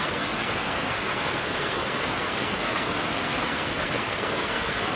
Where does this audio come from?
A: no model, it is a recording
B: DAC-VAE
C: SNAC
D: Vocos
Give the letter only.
C